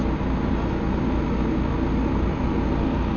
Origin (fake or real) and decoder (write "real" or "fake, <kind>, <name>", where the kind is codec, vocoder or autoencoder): real